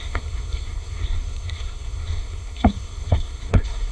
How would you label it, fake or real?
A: fake